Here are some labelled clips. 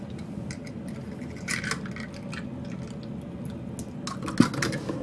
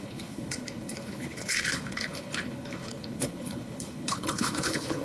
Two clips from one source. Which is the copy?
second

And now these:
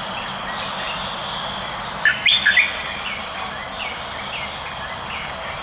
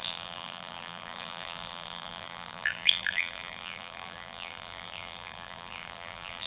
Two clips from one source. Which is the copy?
second